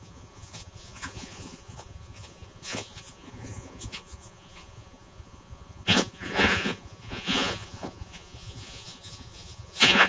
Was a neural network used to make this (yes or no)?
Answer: yes